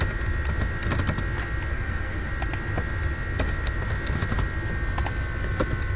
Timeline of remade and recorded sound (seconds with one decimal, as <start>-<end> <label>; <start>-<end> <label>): 0.0-1.7 recorded; 1.7-2.3 remade; 2.3-6.0 recorded